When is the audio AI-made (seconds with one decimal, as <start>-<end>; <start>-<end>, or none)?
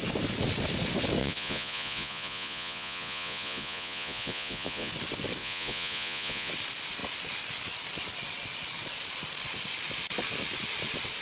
1.2-4.9; 5.4-6.5